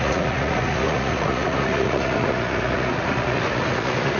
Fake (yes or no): yes